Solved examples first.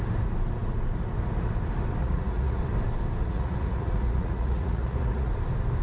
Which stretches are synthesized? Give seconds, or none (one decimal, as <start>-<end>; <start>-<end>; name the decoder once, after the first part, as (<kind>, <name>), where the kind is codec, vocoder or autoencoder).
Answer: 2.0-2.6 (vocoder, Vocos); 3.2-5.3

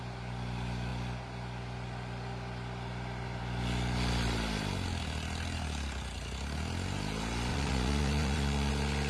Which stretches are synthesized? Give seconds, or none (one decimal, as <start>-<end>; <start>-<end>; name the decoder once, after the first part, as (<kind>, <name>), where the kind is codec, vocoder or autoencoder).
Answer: 7.5-8.7 (vocoder, Vocos)

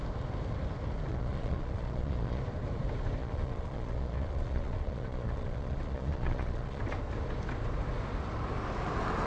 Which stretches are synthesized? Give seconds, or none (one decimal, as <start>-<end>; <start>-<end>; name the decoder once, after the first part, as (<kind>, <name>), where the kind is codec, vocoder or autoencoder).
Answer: 1.1-2.4 (vocoder, Vocos); 3.2-6.8

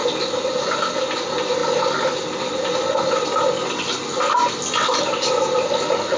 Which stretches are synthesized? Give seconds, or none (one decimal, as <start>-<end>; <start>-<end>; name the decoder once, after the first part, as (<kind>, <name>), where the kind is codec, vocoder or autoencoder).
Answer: none

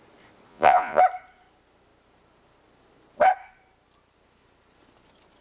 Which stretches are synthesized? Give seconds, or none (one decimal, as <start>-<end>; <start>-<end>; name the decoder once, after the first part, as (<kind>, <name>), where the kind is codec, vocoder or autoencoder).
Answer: 0.5-1.0 (vocoder, Vocos)

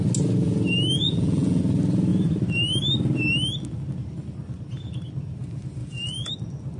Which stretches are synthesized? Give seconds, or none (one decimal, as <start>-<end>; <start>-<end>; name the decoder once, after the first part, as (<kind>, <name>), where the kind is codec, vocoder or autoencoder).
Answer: 1.0-1.6 (vocoder, Vocos); 5.8-6.3

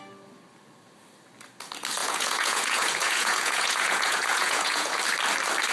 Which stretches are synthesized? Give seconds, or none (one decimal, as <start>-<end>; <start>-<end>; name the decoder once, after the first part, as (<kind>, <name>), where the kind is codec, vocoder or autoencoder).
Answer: 2.0-5.0 (vocoder, Vocos)